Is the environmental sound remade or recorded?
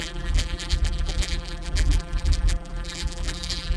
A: remade